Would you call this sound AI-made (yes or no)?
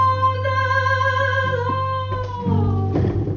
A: no